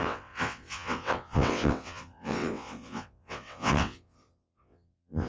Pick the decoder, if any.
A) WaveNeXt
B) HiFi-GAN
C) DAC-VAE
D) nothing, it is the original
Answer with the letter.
A